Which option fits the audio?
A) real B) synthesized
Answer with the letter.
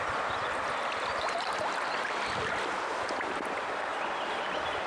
A